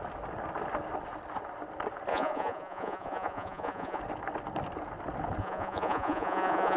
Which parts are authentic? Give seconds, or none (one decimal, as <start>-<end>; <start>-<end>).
0.0-2.1; 4.0-5.4